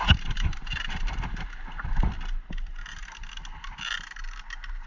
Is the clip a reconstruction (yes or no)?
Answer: no